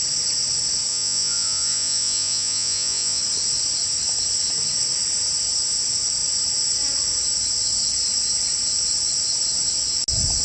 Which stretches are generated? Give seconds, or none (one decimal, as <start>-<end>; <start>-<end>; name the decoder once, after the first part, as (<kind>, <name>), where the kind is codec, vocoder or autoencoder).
0.9-3.2 (vocoder, Vocos)